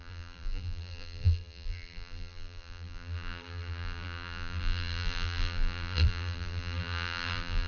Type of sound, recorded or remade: remade